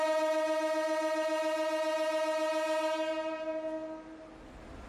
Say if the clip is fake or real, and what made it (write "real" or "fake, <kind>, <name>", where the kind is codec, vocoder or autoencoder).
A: real